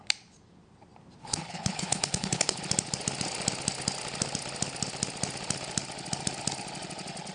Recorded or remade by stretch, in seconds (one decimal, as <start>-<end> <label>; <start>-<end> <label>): 0.0-1.2 recorded; 1.2-2.6 remade; 2.6-7.3 recorded